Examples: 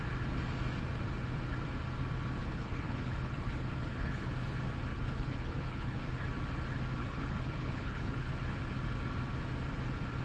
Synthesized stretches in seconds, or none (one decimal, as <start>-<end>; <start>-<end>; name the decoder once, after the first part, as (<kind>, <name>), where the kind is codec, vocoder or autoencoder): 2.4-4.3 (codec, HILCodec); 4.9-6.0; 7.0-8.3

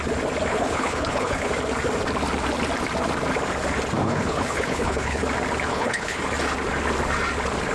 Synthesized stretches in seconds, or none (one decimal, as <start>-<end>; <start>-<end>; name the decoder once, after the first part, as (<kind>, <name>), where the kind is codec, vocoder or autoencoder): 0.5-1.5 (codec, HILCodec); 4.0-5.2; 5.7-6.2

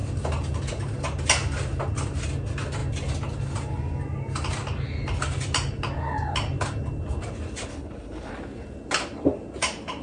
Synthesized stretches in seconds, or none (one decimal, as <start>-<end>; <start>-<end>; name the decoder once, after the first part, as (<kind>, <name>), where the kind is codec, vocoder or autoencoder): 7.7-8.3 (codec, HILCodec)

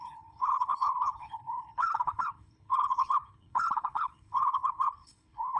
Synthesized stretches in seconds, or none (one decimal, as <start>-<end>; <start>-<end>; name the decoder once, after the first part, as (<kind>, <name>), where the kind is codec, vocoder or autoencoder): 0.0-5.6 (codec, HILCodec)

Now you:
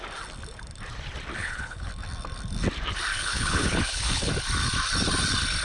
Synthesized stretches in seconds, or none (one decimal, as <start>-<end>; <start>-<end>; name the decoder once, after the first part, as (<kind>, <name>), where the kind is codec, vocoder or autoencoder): 1.4-1.9 (codec, HILCodec); 3.1-4.3

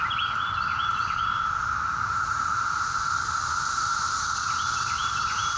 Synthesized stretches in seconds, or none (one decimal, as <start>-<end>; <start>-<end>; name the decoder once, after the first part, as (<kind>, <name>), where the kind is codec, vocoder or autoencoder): none